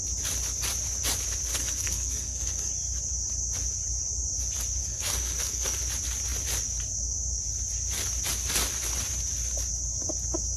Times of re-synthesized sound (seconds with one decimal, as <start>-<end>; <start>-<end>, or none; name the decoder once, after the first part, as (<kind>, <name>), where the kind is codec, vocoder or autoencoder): 1.5-2.7 (codec, SNAC); 4.8-5.8